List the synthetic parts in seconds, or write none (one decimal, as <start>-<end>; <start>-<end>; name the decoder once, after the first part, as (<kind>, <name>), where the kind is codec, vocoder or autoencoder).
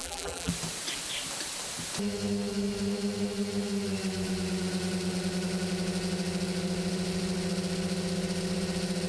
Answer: 0.0-0.5 (vocoder, BigVGAN v2)